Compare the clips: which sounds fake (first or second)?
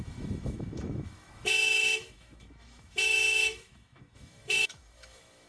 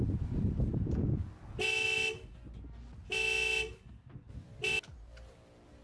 first